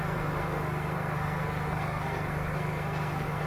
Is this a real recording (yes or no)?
no